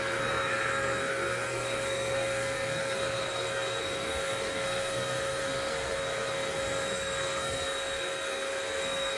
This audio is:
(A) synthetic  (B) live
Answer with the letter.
A